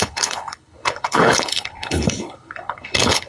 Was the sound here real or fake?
fake